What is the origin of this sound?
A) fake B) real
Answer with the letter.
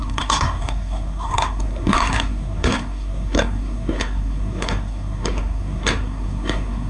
A